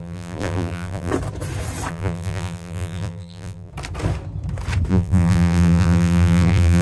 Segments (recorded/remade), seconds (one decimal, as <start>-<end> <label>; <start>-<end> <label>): 0.0-1.1 remade; 1.1-1.9 recorded; 1.9-3.7 remade; 3.7-4.9 recorded; 4.9-6.8 remade